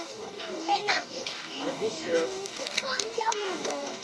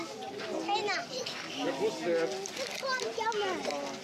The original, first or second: second